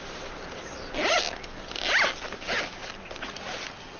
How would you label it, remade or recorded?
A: recorded